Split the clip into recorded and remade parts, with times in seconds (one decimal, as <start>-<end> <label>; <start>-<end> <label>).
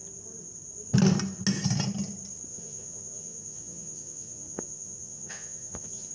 0.0-2.5 recorded; 2.5-6.1 remade